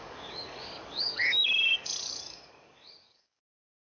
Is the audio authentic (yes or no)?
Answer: no